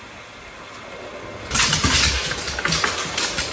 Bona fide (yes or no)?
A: yes